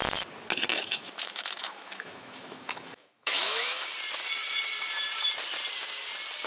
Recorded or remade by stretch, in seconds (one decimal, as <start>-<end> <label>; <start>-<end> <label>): 0.0-0.7 recorded; 0.7-3.9 remade; 3.9-6.5 recorded